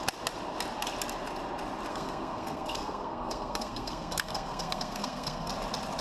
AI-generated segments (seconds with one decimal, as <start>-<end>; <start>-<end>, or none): 1.9-5.5